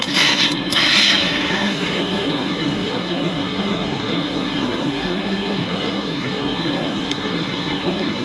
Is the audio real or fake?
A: fake